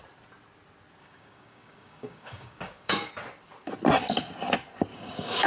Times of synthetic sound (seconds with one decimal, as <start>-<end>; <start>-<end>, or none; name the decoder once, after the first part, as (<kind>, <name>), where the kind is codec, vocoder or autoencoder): 1.0-3.1 (codec, DAC); 4.9-5.5